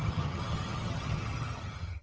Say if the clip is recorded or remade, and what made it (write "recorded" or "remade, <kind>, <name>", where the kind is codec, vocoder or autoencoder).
remade, vocoder, HiFi-GAN